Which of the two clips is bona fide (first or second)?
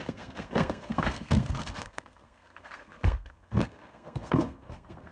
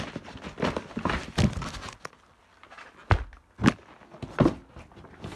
second